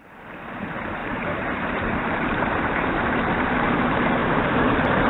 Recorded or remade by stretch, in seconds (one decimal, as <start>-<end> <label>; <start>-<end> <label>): 0.0-1.0 recorded; 1.0-2.9 remade; 2.9-4.2 recorded; 4.2-5.1 remade